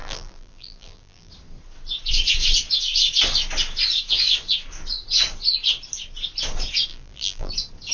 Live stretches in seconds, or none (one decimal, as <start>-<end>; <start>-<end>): 1.3-6.9; 7.5-7.9